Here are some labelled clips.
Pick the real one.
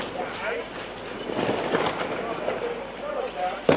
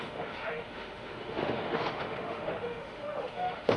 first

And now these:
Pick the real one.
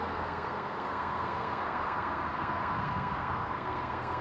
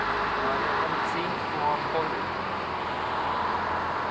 second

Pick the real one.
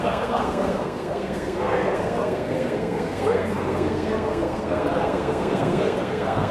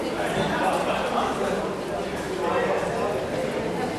second